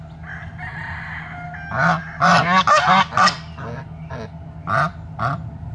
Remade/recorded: recorded